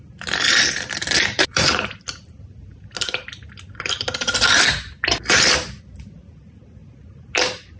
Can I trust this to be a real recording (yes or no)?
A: yes